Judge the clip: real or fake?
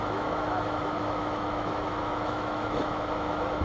fake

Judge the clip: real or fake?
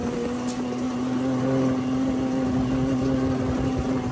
real